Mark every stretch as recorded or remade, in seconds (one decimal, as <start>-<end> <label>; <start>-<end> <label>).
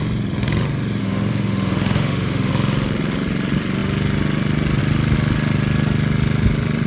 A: 0.0-1.0 recorded; 1.0-2.5 remade; 2.5-6.9 recorded